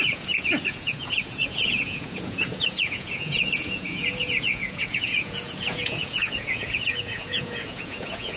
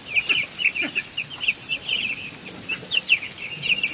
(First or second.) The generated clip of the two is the first